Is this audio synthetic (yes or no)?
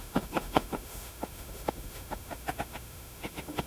yes